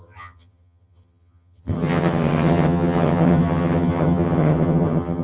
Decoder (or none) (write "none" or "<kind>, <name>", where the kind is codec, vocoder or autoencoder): vocoder, HiFi-GAN